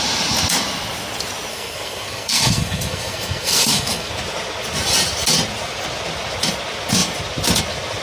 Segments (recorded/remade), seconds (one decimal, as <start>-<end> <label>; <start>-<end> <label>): 0.0-1.5 recorded; 1.5-4.1 remade; 4.1-8.0 recorded